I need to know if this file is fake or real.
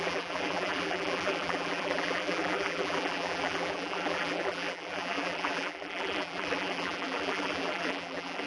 fake